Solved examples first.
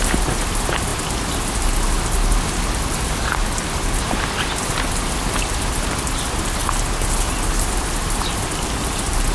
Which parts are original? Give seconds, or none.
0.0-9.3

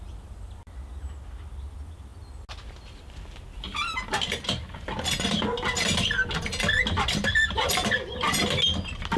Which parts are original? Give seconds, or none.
0.0-9.2